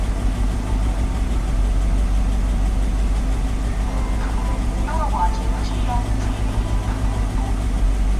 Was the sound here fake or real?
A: real